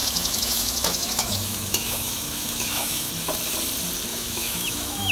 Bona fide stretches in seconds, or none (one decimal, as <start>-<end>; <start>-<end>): 3.1-4.1